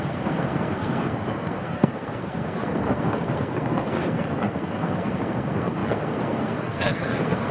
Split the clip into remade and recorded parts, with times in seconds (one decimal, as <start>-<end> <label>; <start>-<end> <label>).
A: 0.0-7.5 remade